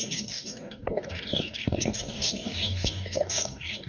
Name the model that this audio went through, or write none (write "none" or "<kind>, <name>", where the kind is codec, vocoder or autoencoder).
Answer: codec, DAC